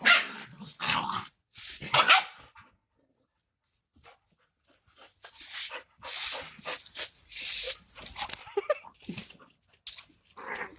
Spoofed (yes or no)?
no